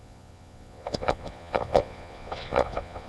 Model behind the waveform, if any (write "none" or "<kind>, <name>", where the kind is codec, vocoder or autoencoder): vocoder, Vocos